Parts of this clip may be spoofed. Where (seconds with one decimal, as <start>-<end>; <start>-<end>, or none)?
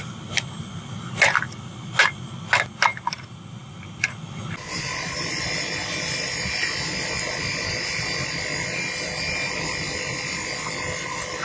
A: 2.9-4.1